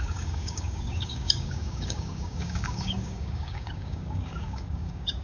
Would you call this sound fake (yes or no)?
yes